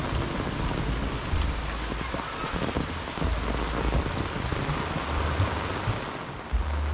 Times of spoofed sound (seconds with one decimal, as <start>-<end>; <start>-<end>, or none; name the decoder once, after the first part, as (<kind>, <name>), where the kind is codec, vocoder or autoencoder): none